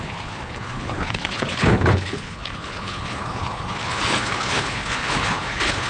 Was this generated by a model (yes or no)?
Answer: yes